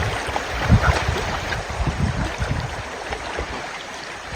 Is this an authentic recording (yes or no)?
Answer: no